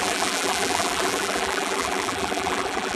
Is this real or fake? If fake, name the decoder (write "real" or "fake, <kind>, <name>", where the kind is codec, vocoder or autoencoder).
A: fake, vocoder, BigVGAN v2